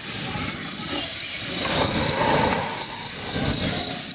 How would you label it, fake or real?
real